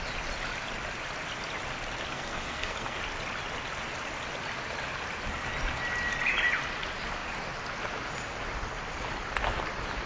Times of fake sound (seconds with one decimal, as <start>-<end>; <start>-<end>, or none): 2.1-3.0